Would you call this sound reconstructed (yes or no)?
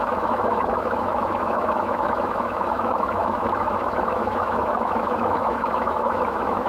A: yes